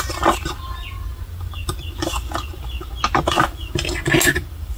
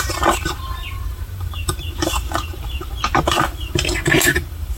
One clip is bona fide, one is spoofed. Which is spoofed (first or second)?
second